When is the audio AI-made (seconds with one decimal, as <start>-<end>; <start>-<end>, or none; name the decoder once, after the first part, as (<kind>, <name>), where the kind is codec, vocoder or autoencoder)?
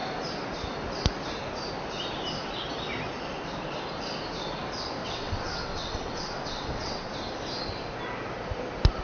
5.0-7.1 (vocoder, WaveNeXt)